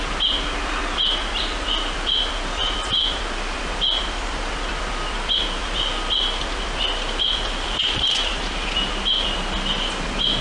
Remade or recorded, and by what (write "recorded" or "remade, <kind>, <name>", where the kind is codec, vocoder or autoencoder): recorded